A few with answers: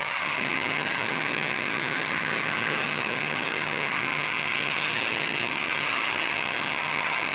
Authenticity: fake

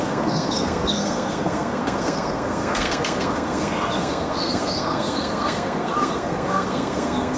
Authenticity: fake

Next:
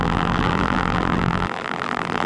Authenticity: fake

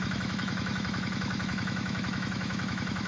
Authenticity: fake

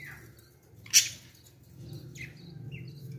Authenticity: real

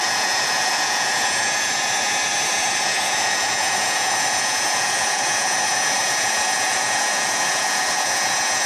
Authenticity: fake